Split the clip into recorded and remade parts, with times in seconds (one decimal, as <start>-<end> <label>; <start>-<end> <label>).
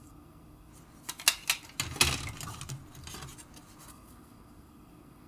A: 0.0-0.7 remade; 0.7-3.9 recorded; 3.9-5.3 remade